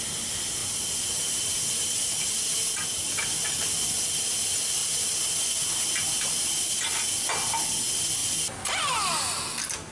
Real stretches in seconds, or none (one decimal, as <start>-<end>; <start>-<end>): 0.0-9.9